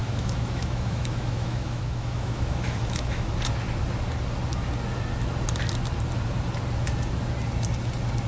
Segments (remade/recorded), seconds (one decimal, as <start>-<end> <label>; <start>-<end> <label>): 0.0-3.3 remade; 3.3-8.3 recorded